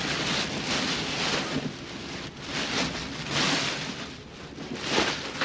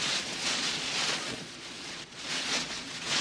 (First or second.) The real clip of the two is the first